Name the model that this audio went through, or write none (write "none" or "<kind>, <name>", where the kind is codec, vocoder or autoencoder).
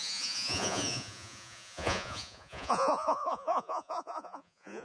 vocoder, Vocos